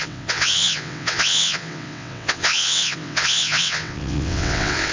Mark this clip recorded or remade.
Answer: remade